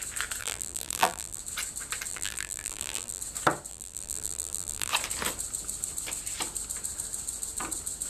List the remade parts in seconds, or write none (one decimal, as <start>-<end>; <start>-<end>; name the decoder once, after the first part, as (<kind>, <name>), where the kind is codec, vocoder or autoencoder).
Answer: 0.4-1.4 (vocoder, BigVGAN v2); 2.1-3.2; 3.7-4.9